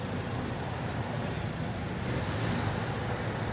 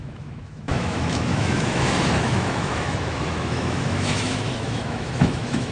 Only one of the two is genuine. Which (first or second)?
first